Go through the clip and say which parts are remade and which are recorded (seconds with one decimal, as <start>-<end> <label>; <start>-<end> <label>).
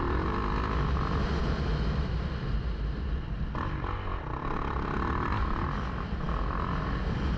0.0-7.4 recorded